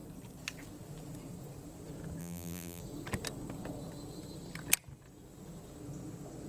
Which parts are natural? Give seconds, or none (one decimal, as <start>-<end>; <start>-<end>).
0.0-2.2; 2.8-6.5